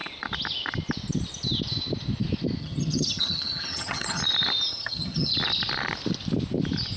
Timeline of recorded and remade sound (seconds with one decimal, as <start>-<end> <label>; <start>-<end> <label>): 0.0-2.6 recorded; 2.6-4.2 remade; 4.2-4.7 recorded; 4.7-5.3 remade; 5.3-7.0 recorded